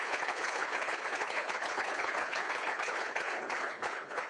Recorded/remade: remade